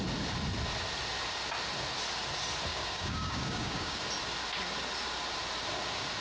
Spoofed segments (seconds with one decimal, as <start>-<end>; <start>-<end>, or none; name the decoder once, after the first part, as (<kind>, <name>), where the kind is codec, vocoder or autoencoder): 2.7-4.0 (codec, DAC)